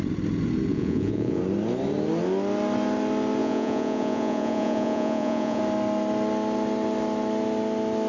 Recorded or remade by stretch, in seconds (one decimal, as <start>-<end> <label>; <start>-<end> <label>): 0.0-0.7 recorded; 0.7-1.4 remade; 1.4-3.4 recorded; 3.4-5.6 remade; 5.6-8.1 recorded